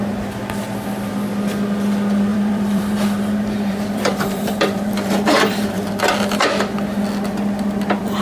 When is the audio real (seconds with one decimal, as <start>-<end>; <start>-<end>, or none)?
0.0-2.3; 5.9-8.2